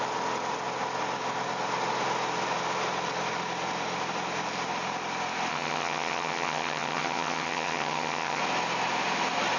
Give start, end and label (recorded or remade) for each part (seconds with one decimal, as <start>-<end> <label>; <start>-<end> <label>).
0.0-5.5 recorded; 5.5-8.4 remade; 8.4-9.6 recorded